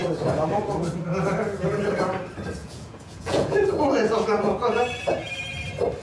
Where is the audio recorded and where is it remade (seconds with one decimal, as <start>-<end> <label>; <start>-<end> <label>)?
0.0-2.6 recorded; 2.6-5.3 remade; 5.3-6.0 recorded